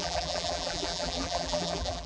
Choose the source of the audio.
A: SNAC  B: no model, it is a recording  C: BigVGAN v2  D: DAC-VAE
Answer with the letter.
C